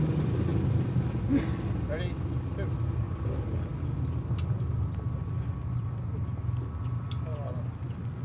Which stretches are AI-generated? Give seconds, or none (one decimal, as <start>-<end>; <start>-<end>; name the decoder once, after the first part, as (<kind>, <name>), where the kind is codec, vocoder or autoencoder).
none